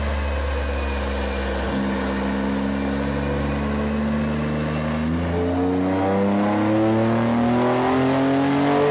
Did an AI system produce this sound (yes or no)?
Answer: no